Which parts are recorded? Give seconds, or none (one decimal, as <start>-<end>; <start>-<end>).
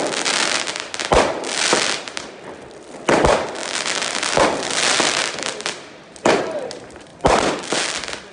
0.0-8.3